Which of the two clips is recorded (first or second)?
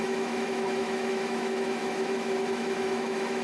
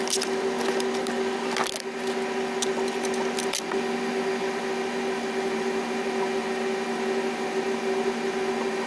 second